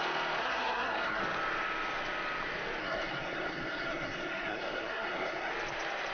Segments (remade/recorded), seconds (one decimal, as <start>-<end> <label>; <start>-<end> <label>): 0.0-0.4 recorded; 0.4-1.2 remade; 1.2-2.8 recorded; 2.8-5.5 remade; 5.5-6.1 recorded